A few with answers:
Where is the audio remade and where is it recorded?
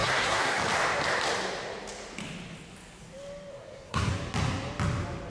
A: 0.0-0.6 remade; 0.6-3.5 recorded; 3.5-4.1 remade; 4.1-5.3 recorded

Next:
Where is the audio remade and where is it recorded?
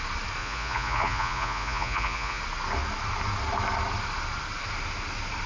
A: 0.0-0.4 recorded; 0.4-2.4 remade; 2.4-5.5 recorded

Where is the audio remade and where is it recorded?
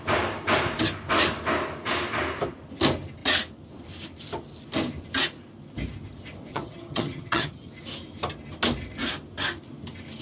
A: 0.0-6.5 recorded; 6.5-7.7 remade; 7.7-10.2 recorded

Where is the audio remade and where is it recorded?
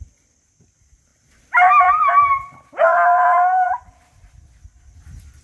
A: 0.0-1.1 recorded; 1.1-4.3 remade; 4.3-5.4 recorded